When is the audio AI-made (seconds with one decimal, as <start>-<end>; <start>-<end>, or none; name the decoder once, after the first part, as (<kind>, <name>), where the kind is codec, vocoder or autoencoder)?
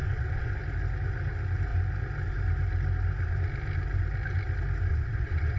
0.0-0.6 (vocoder, WaveNeXt); 4.9-5.6